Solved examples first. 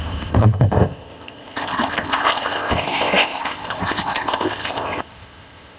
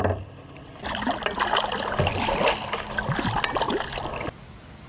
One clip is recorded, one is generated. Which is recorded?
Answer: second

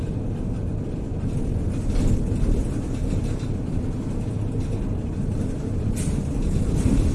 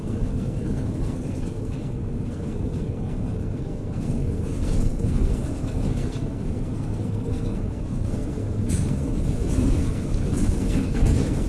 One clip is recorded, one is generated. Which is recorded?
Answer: first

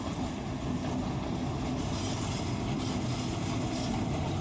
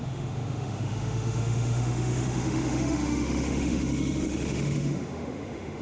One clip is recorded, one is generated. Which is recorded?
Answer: first